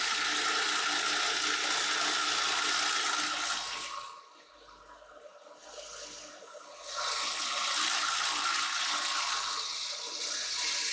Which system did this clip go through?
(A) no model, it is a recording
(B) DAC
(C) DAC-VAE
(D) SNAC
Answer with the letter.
A